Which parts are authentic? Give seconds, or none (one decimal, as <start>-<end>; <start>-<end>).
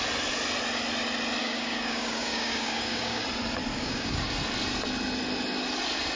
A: 0.0-1.4; 3.2-3.7; 4.3-6.2